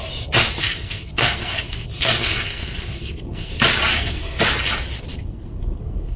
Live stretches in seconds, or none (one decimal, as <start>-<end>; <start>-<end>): 0.0-0.6; 3.5-3.9; 4.4-5.1